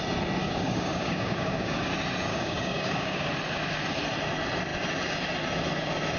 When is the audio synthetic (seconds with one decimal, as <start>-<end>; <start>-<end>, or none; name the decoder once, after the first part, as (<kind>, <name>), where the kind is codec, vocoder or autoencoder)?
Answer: 0.4-1.9 (codec, DAC); 2.3-3.3

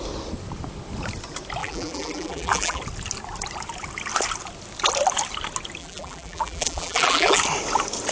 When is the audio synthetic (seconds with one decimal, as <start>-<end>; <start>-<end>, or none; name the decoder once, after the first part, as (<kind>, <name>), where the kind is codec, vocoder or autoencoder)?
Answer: 1.6-2.8 (vocoder, BigVGAN v2); 5.8-7.4

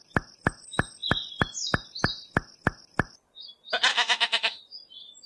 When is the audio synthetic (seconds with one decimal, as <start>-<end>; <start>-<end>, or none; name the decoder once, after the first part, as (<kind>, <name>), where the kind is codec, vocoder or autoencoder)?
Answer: 3.9-4.6 (autoencoder, DAC-VAE)

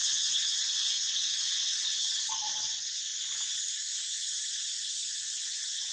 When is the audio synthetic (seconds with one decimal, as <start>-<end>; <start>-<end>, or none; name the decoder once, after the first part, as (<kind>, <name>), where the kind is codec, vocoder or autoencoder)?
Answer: 0.0-3.1 (vocoder, WaveNeXt); 5.2-5.9

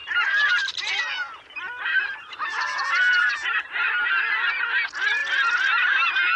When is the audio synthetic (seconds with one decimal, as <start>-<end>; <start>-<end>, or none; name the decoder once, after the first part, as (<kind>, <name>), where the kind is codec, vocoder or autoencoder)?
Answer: 0.0-3.2 (vocoder, BigVGAN v2)

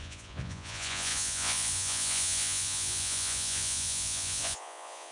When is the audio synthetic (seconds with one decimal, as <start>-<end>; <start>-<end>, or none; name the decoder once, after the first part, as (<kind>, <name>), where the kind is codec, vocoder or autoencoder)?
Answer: 0.0-5.1 (vocoder, Vocos)

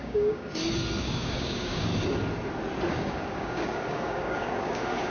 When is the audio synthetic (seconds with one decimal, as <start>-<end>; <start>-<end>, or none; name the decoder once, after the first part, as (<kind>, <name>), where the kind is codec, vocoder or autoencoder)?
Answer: 0.0-0.4 (codec, DAC); 1.0-1.9; 2.9-5.1

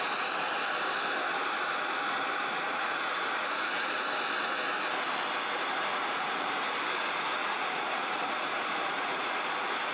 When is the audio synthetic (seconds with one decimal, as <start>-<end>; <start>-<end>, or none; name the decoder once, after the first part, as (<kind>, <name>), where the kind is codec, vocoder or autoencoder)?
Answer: 2.5-3.9 (vocoder, Vocos); 5.9-6.5; 7.4-9.5